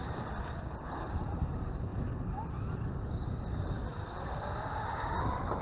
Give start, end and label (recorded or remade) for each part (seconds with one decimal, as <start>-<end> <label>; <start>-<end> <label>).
0.0-1.9 remade; 1.9-3.0 recorded; 3.0-5.6 remade